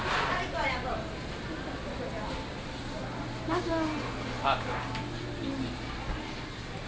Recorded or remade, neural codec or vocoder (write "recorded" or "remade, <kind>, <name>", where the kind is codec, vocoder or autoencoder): recorded